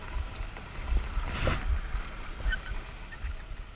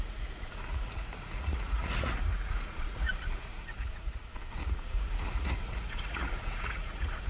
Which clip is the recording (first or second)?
first